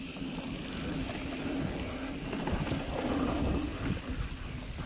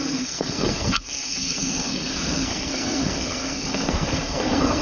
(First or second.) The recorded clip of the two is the first